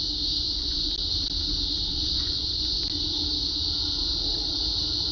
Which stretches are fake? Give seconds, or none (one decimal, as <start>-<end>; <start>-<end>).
0.4-0.9; 1.9-2.8